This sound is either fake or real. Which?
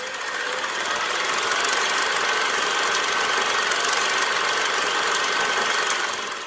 real